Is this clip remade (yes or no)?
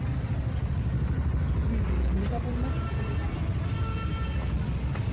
no